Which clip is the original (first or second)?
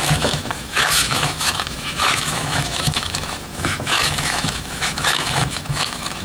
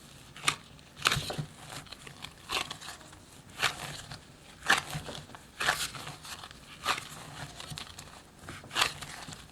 second